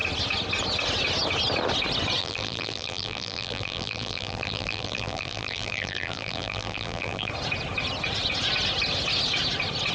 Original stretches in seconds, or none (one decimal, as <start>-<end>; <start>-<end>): 0.0-2.2; 7.3-9.9